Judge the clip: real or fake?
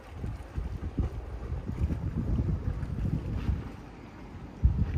real